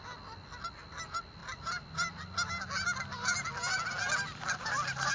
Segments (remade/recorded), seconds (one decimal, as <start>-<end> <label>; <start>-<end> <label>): 0.0-5.1 recorded